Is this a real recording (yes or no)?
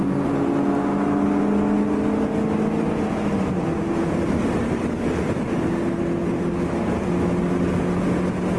yes